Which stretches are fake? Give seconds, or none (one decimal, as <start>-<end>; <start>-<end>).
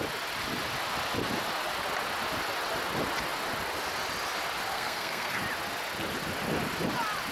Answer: 4.7-5.4